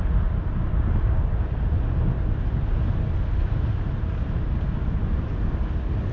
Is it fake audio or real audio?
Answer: real